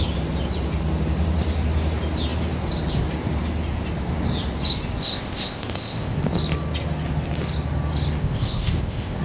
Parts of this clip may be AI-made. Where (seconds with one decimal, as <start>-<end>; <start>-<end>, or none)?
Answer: 5.0-6.2; 8.2-9.2